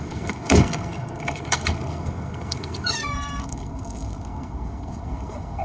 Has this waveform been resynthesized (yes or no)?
yes